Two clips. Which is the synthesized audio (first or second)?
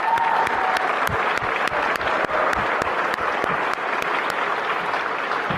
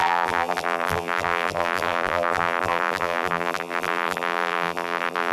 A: second